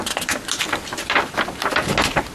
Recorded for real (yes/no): yes